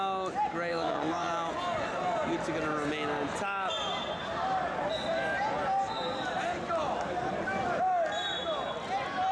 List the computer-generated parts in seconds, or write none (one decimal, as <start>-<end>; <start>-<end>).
0.7-1.3